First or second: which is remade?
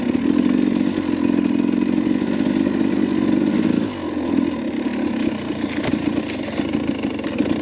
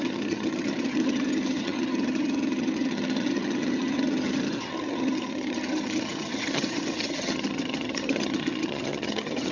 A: second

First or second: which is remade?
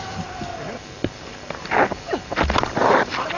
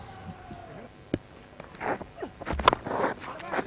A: first